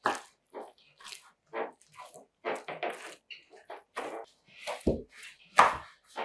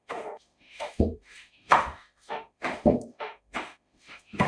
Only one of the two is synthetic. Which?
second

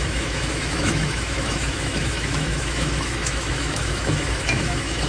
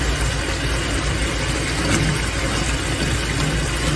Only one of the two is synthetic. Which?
first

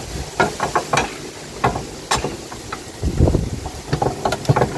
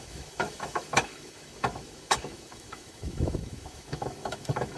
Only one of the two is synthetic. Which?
second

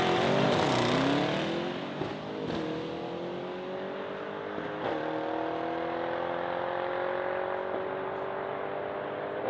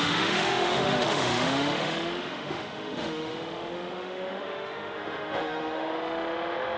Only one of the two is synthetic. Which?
second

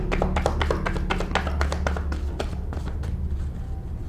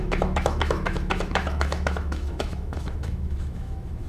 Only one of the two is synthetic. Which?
second